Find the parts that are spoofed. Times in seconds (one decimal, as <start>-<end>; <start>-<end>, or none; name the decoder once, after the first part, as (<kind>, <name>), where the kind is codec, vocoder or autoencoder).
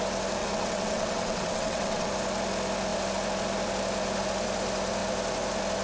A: 0.4-2.1 (vocoder, WaveNeXt)